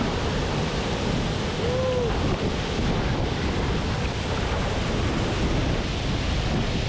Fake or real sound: real